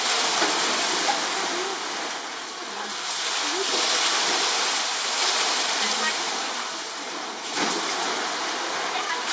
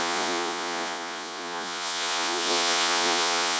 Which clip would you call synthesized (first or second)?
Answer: second